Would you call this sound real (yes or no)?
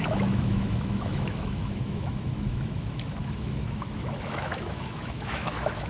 no